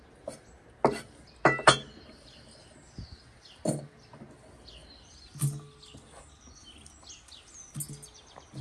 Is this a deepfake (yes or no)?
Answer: no